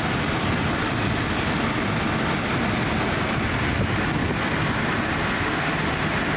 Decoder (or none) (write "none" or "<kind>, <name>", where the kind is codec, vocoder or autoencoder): none